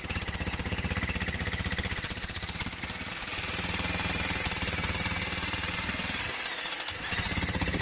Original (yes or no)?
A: yes